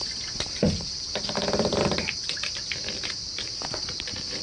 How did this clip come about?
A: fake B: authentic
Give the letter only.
A